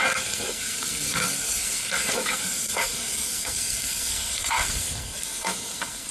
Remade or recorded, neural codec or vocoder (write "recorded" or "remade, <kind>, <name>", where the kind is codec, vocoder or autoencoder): remade, codec, SNAC